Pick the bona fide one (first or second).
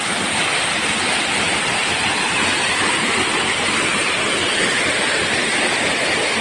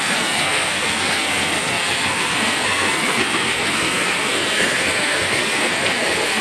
first